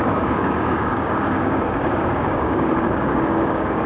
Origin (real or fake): fake